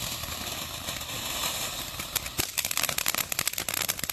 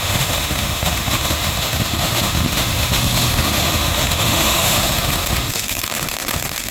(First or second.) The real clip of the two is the first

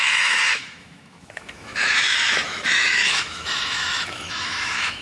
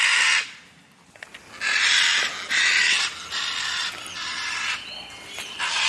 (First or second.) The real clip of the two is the second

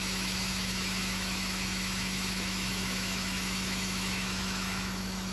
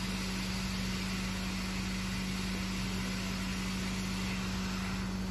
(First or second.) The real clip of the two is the second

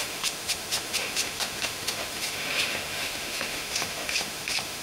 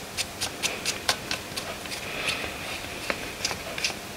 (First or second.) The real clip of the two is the second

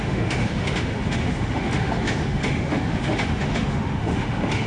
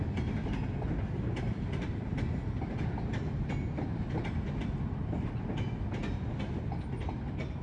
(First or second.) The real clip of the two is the second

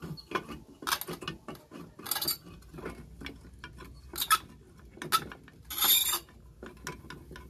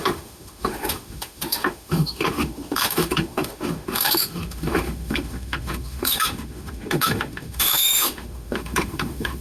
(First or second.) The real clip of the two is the first